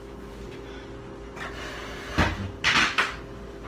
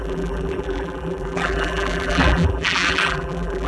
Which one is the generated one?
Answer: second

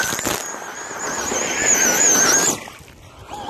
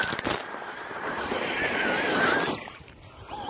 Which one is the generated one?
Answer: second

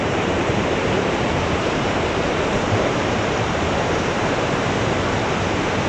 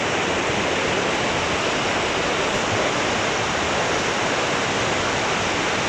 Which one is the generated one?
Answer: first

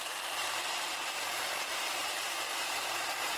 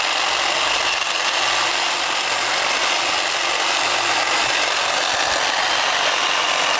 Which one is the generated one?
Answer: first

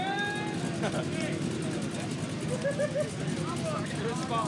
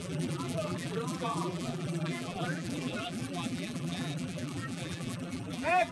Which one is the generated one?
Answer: second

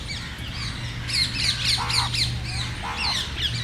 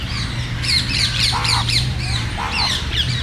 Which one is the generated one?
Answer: second